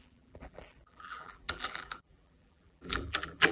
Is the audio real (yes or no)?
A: no